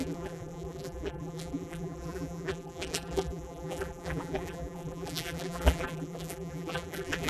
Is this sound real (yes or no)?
no